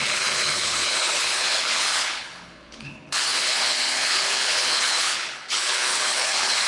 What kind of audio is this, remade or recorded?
remade